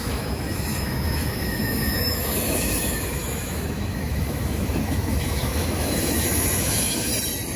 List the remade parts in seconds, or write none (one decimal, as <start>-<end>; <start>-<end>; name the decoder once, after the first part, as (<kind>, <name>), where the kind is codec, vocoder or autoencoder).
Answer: 0.0-7.1 (autoencoder, DAC-VAE)